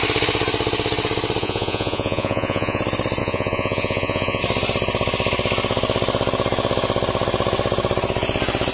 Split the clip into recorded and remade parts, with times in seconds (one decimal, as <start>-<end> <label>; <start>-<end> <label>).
0.0-1.4 recorded; 1.4-2.8 remade; 2.8-3.2 recorded; 3.2-4.4 remade; 4.4-8.7 recorded

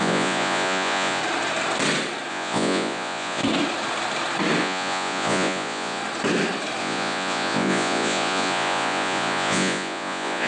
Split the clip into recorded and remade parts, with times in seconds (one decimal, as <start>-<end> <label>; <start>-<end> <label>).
0.0-1.2 remade; 1.2-2.3 recorded; 2.3-3.4 remade; 3.4-4.6 recorded; 4.6-6.0 remade; 6.0-6.8 recorded; 6.8-10.5 remade

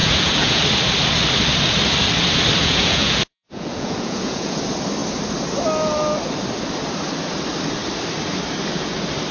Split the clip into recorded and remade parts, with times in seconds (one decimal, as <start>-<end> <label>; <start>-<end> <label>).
0.0-0.6 remade; 0.6-2.6 recorded; 2.6-4.6 remade; 4.6-9.3 recorded